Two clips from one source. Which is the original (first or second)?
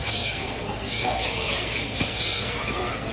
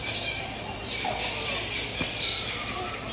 second